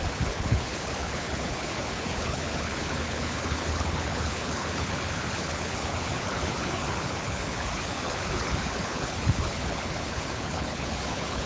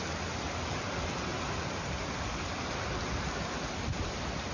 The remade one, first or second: first